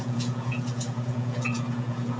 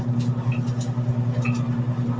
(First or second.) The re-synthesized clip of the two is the first